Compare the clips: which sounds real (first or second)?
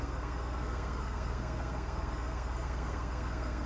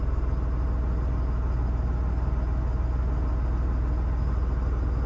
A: second